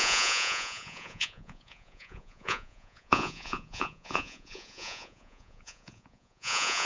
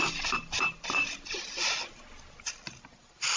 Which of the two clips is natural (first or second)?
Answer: second